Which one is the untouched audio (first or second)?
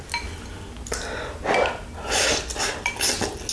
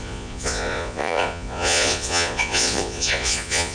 first